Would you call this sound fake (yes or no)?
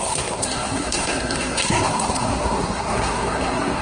yes